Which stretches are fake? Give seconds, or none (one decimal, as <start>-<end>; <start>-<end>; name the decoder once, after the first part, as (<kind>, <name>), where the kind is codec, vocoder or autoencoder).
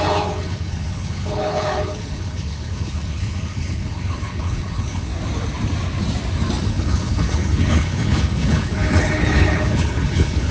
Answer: 0.0-5.1 (codec, HILCodec); 6.6-10.5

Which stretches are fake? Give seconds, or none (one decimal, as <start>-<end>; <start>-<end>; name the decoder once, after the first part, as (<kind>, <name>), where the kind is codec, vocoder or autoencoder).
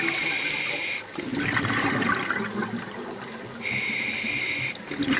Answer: none